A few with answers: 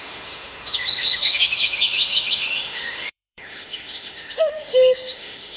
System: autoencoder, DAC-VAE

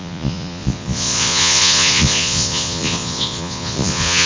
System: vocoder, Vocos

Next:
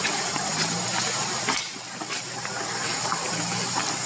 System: none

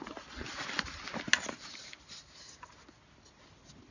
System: none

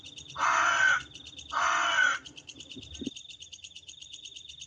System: vocoder, BigVGAN v2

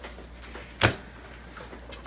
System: none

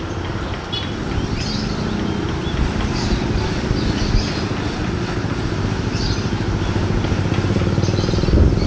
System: none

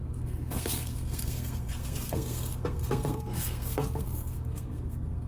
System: codec, SNAC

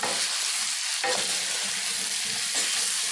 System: none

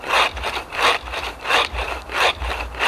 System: none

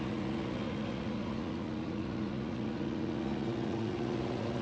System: vocoder, Vocos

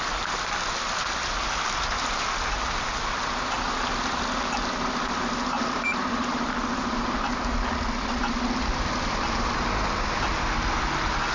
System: none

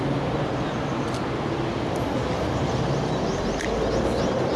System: none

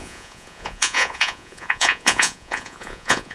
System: vocoder, Vocos